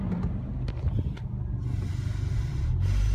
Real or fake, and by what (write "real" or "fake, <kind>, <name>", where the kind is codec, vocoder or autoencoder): real